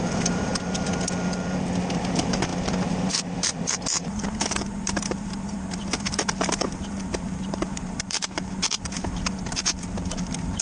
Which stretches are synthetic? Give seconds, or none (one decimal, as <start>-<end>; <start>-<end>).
0.0-0.5; 1.9-10.6